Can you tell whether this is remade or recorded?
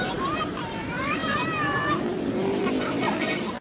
remade